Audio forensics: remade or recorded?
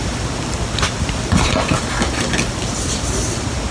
recorded